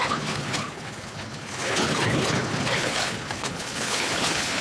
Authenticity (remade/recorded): remade